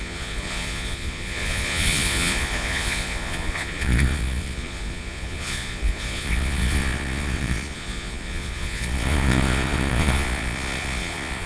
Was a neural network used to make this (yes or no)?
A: yes